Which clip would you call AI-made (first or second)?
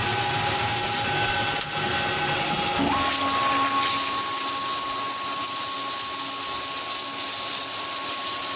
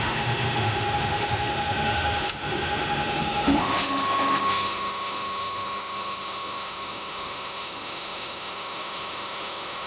second